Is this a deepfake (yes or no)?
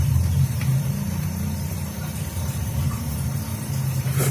yes